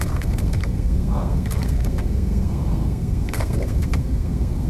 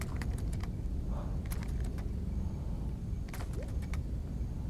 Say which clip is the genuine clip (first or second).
second